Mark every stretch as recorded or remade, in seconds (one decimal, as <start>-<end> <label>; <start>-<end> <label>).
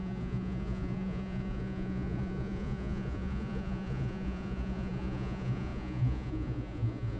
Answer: 0.0-7.2 remade